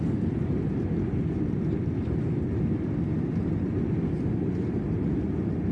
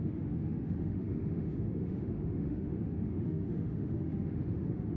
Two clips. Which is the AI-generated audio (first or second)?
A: second